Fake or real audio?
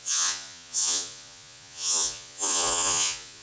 fake